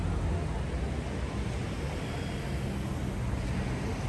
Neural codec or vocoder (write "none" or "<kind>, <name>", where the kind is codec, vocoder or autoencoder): none